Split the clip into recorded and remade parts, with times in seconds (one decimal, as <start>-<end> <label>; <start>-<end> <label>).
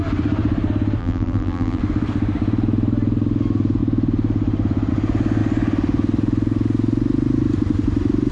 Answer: 0.0-1.0 recorded; 1.0-1.8 remade; 1.8-8.3 recorded